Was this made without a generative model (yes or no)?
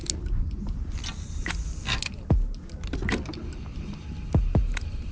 yes